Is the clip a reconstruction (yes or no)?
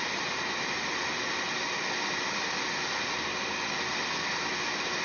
no